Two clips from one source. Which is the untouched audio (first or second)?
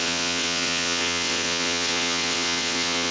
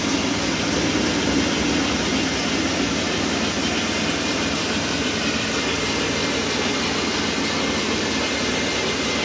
second